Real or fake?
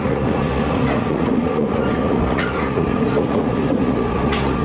fake